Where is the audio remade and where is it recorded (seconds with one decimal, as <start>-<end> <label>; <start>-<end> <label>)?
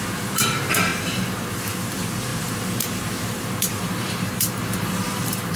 0.0-5.6 remade